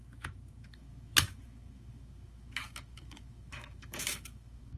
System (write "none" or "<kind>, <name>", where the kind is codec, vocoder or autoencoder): autoencoder, DAC-VAE